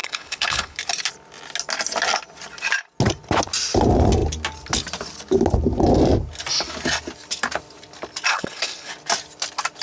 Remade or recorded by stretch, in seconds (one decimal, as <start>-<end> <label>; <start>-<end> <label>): 0.0-0.8 remade; 0.8-8.3 recorded; 8.3-8.9 remade; 8.9-9.8 recorded